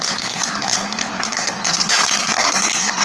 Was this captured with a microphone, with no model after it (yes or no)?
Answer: no